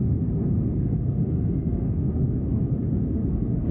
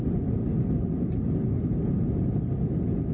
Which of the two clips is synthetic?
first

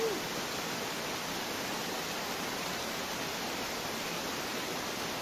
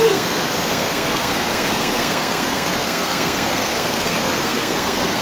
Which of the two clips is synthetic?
second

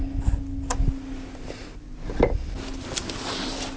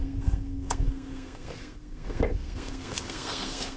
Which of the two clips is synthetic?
second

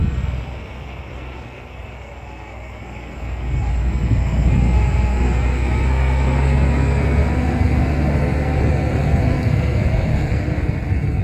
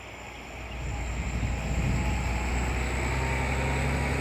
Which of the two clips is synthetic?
first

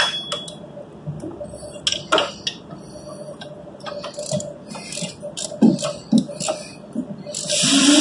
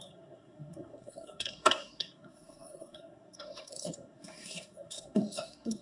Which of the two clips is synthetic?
second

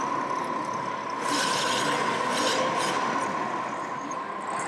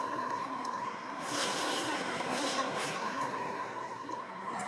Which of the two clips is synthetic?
second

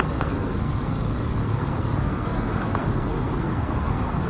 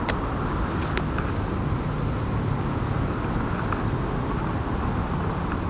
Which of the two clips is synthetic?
first